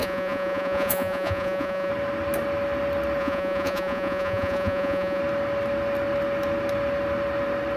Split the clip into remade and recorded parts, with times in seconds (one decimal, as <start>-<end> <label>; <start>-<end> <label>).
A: 0.0-1.9 remade; 1.9-3.2 recorded; 3.2-5.2 remade; 5.2-7.8 recorded